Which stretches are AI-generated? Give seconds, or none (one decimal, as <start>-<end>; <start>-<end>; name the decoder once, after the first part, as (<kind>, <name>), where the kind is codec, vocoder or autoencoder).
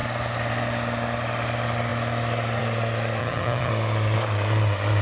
3.2-3.7 (vocoder, HiFi-GAN)